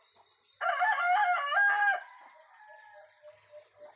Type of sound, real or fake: real